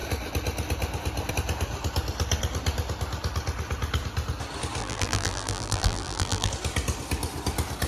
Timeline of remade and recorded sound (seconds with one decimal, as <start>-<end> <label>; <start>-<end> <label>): 0.0-4.8 recorded; 4.8-6.5 remade; 6.5-7.9 recorded